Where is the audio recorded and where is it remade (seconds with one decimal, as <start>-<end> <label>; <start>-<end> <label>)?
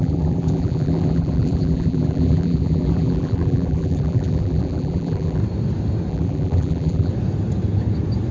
0.0-5.4 remade; 5.4-6.1 recorded; 6.1-7.1 remade; 7.1-8.3 recorded